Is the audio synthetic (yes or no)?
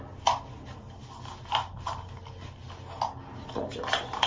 no